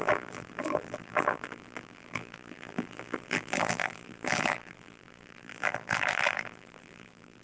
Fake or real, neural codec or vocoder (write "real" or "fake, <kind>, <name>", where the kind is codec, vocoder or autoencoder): fake, vocoder, BigVGAN v2